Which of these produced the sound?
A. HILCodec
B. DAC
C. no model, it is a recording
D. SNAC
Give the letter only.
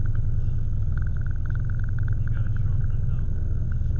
C